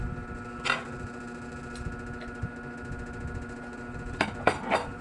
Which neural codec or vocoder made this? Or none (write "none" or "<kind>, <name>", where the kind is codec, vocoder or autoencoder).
none